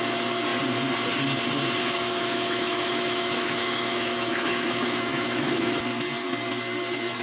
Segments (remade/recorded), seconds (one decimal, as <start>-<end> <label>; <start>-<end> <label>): 0.0-1.8 recorded; 1.8-5.7 remade; 5.7-7.2 recorded